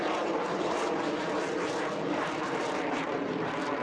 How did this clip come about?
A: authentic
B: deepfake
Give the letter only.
B